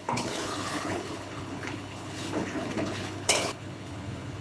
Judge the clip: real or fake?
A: fake